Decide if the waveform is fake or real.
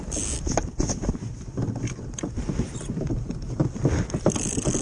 real